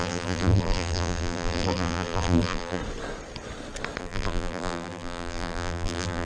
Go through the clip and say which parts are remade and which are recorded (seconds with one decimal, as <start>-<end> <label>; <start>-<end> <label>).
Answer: 0.0-2.8 remade; 2.8-4.0 recorded; 4.0-6.2 remade